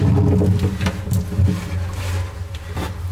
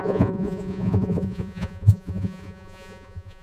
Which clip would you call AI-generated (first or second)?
second